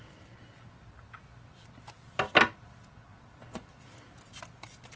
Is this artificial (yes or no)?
no